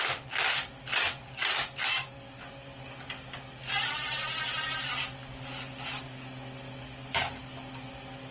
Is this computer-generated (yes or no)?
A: no